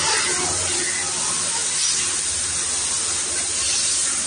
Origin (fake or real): real